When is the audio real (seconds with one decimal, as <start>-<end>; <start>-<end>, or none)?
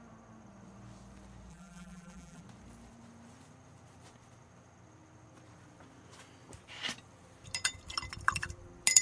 0.0-1.5; 2.4-9.0